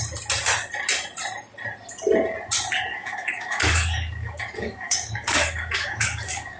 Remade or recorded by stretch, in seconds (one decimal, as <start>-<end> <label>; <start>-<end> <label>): 0.0-2.9 recorded; 2.9-6.6 remade